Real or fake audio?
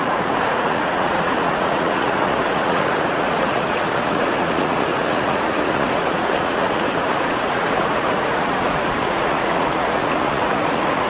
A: fake